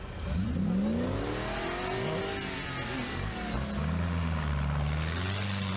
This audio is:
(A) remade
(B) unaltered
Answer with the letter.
B